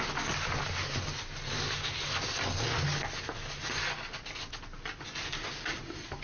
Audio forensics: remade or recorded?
recorded